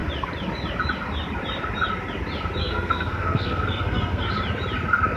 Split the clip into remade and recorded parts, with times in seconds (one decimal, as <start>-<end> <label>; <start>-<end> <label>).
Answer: 0.0-2.6 recorded; 2.6-4.3 remade; 4.3-5.2 recorded